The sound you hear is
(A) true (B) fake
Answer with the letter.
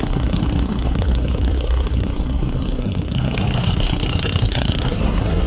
B